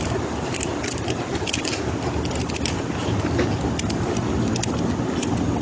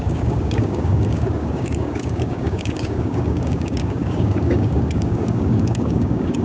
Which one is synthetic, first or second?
second